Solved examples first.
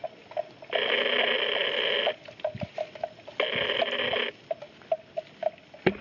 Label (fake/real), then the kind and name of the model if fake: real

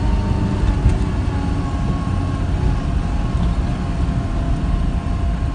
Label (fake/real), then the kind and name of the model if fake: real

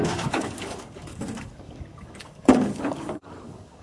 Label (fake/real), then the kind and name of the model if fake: fake, codec, DAC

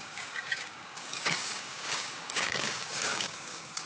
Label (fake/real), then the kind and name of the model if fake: fake, codec, DAC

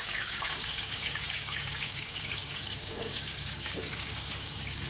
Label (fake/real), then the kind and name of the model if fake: fake, codec, DAC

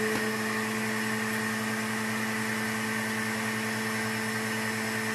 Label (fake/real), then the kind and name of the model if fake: real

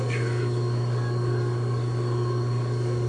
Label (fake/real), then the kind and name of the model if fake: fake, codec, DAC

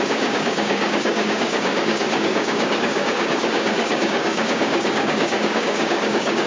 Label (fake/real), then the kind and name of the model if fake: fake, codec, DAC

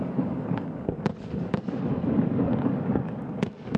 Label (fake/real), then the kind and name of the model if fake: fake, codec, DAC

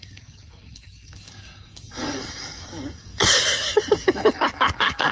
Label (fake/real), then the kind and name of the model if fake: fake, codec, DAC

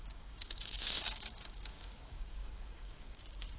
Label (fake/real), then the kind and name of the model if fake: fake, codec, DAC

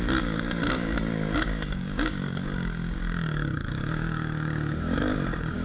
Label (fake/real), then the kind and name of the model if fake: fake, codec, DAC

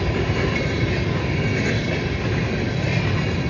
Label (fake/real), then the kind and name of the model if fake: real